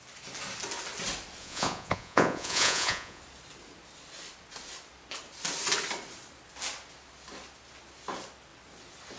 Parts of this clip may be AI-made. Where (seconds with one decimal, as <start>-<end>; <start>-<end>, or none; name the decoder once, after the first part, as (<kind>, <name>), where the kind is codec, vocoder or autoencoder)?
1.4-3.2 (vocoder, Vocos)